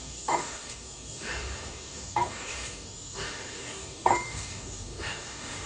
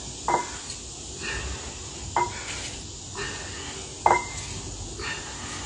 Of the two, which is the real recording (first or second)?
second